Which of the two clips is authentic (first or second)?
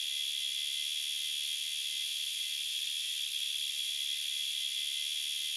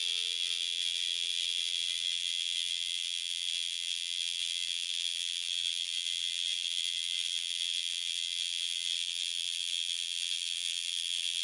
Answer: first